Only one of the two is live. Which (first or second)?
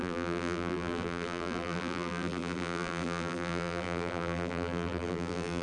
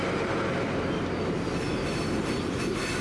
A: second